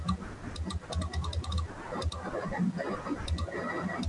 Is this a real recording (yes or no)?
yes